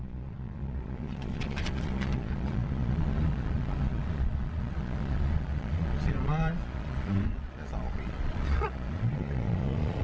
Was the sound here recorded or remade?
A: remade